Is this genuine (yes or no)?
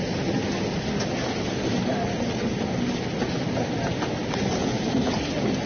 yes